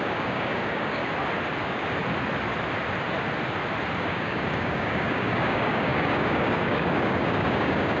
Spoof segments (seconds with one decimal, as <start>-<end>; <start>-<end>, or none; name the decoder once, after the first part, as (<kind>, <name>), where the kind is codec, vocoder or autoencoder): 0.0-1.0 (codec, DAC); 1.6-2.0; 4.0-8.0